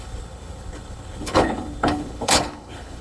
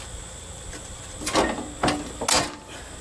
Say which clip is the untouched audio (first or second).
second